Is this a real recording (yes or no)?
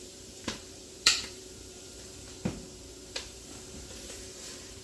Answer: no